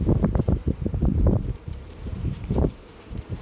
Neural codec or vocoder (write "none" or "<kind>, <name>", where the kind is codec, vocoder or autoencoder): vocoder, BigVGAN v2